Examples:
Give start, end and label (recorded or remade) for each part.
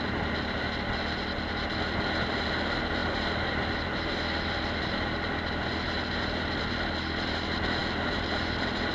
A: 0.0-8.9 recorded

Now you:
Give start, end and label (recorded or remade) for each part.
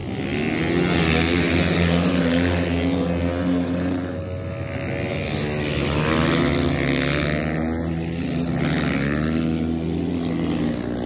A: 0.0-11.1 recorded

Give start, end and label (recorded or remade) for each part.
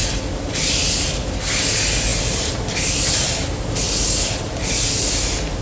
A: 0.0-5.6 recorded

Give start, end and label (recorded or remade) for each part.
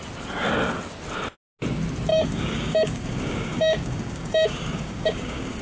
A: 0.0-2.1 recorded; 2.1-5.6 remade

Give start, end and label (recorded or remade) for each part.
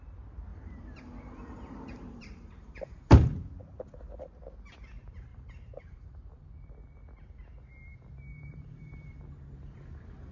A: 0.0-0.5 recorded; 0.5-3.3 remade; 3.3-5.3 recorded; 5.3-6.3 remade; 6.3-8.3 recorded; 8.3-9.2 remade; 9.2-10.3 recorded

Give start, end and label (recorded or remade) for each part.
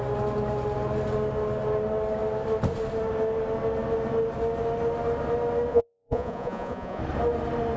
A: 0.0-5.7 recorded; 5.7-7.0 remade; 7.0-7.8 recorded